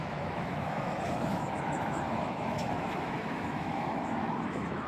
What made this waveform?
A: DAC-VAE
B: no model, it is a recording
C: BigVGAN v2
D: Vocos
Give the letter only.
A